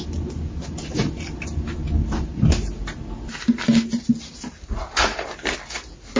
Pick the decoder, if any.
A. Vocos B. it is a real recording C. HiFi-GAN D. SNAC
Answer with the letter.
B